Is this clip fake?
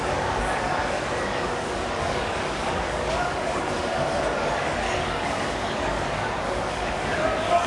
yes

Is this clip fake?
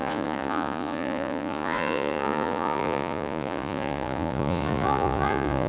yes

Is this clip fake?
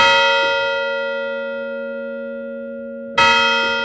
no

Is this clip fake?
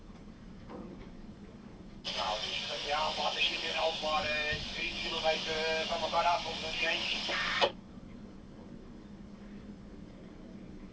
yes